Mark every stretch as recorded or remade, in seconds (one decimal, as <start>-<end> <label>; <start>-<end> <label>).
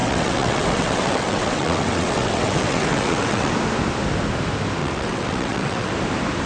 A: 0.0-3.5 remade; 3.5-4.8 recorded; 4.8-5.9 remade; 5.9-6.5 recorded